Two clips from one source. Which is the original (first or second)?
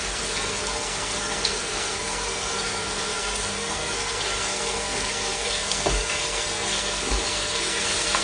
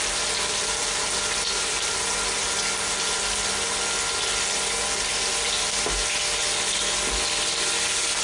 second